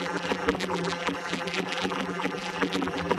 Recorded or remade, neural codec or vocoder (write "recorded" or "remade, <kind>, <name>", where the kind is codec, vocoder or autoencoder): remade, vocoder, BigVGAN v2